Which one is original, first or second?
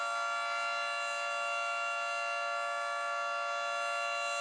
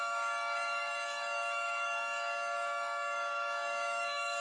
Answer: first